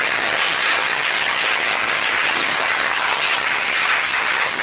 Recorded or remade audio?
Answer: remade